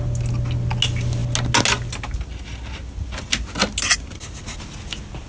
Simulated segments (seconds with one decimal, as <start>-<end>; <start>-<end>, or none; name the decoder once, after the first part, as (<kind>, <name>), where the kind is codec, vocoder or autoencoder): none